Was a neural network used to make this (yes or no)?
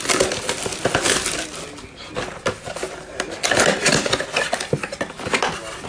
no